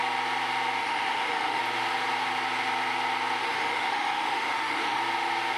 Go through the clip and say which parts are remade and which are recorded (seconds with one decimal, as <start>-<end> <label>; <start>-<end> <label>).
0.0-0.8 recorded; 0.8-1.6 remade; 1.6-3.4 recorded; 3.4-5.0 remade; 5.0-5.6 recorded